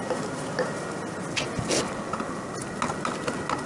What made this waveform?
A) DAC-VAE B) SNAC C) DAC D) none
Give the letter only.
D